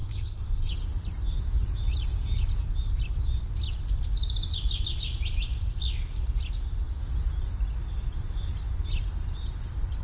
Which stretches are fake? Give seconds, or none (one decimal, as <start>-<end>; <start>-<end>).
0.0-0.7